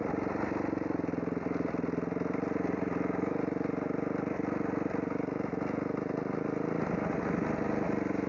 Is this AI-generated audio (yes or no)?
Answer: no